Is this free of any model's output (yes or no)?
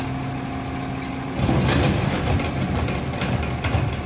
yes